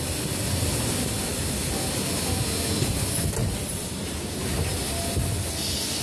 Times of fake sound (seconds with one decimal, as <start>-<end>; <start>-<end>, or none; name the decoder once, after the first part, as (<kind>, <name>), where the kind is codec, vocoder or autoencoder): 3.4-4.7 (vocoder, BigVGAN v2)